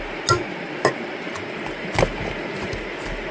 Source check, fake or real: real